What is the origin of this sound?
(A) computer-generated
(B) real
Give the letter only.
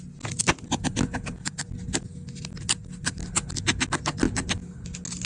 B